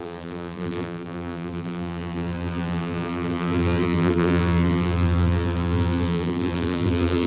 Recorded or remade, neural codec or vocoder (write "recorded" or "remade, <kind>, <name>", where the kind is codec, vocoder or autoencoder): remade, vocoder, BigVGAN v2